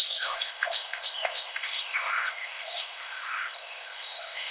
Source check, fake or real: fake